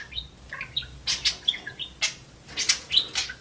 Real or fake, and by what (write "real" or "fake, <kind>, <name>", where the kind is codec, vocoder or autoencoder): real